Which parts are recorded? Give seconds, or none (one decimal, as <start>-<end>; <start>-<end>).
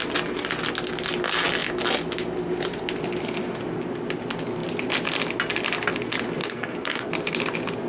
0.0-6.4; 7.1-7.9